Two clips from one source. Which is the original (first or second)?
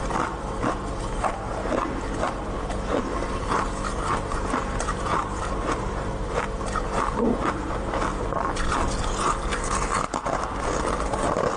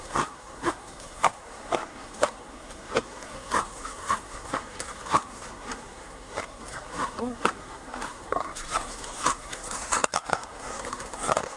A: first